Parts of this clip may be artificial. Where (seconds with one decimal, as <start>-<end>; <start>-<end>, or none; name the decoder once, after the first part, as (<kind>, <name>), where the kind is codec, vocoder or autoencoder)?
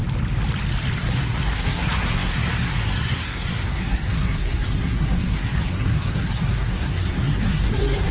1.1-8.1 (codec, SNAC)